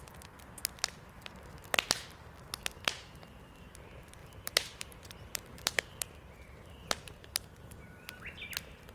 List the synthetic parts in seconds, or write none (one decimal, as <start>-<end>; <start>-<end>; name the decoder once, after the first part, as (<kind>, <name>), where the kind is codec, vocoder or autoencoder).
4.2-8.2 (vocoder, BigVGAN v2)